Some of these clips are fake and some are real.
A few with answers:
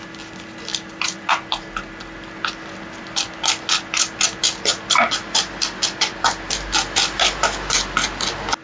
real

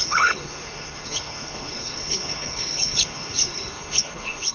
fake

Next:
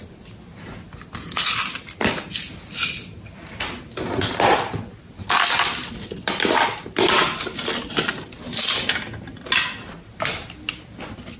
real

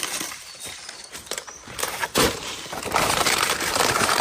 fake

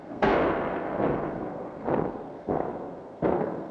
fake